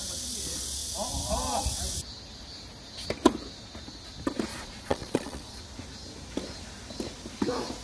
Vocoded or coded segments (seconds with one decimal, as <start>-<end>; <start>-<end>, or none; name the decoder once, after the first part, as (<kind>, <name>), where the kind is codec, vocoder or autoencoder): 4.5-5.6 (vocoder, Vocos)